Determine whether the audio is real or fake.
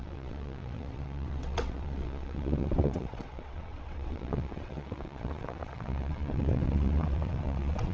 fake